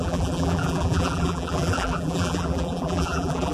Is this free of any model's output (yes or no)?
no